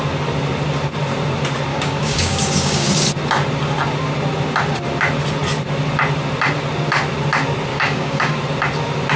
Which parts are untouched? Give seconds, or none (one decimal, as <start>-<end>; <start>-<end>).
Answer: 0.0-1.7; 2.9-7.7; 8.4-9.2